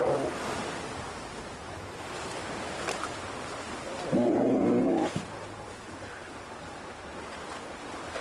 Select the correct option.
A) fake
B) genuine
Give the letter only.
B